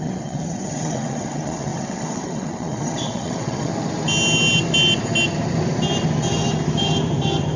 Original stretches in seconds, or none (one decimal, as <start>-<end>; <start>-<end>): 3.7-7.6